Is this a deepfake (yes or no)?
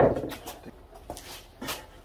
no